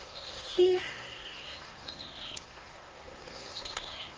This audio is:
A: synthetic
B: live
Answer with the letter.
A